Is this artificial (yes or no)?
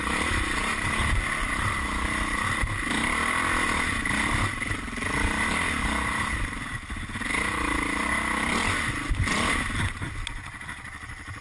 no